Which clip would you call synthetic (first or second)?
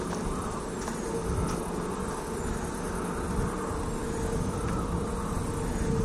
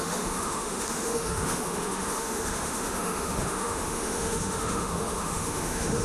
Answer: second